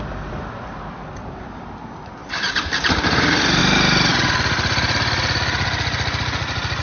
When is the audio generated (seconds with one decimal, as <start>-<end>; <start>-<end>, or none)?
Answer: 2.2-3.6; 4.1-5.4